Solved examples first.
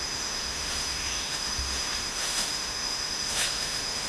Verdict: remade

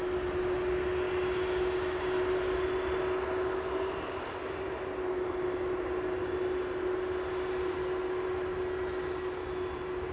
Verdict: recorded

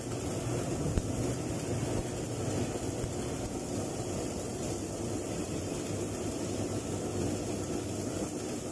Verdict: remade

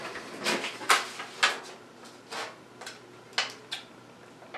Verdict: recorded